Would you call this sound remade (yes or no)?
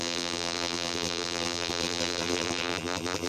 yes